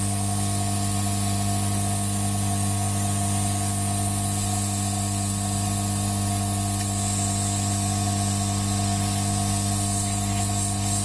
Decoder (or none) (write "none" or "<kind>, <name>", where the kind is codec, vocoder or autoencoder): none